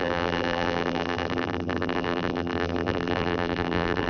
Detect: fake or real fake